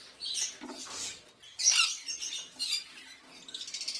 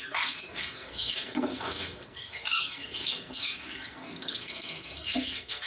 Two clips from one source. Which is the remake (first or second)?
second